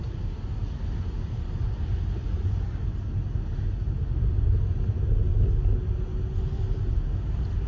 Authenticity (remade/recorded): recorded